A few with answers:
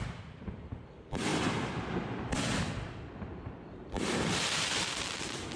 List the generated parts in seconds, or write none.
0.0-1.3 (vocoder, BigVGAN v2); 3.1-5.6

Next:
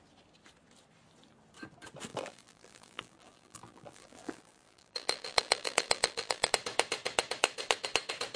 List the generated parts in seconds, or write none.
2.1-6.5 (vocoder, BigVGAN v2)

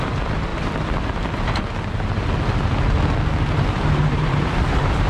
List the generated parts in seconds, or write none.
0.0-0.5 (vocoder, BigVGAN v2); 3.6-5.1

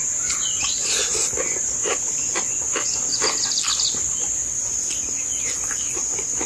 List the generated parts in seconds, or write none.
none

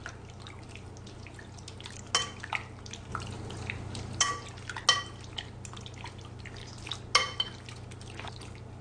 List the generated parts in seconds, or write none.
3.1-4.2 (vocoder, BigVGAN v2)

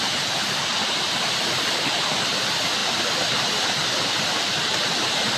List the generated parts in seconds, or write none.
0.7-1.4 (vocoder, BigVGAN v2); 2.8-3.5

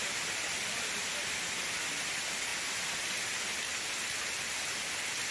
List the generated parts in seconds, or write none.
none

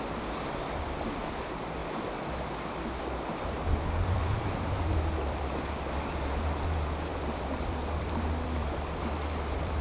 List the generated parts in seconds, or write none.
1.8-5.7 (vocoder, BigVGAN v2); 7.1-9.8